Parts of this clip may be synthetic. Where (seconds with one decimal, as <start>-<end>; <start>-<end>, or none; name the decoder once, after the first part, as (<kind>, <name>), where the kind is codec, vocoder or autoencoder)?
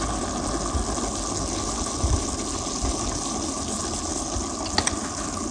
none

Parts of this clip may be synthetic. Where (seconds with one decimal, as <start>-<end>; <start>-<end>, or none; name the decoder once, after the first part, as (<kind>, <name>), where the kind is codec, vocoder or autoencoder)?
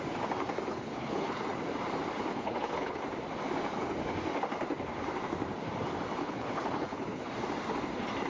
0.7-1.4 (codec, HILCodec); 2.3-3.0; 6.2-7.3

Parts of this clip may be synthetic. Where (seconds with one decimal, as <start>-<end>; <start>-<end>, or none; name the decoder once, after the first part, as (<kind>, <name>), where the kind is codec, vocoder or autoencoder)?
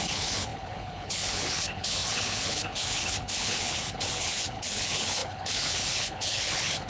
0.0-6.9 (codec, HILCodec)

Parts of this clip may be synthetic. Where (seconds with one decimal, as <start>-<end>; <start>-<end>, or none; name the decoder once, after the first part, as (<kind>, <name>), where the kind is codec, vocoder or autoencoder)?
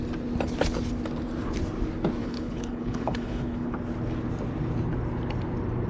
2.2-3.7 (codec, HILCodec)